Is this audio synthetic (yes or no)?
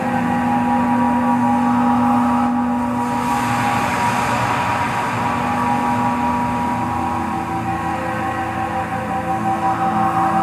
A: no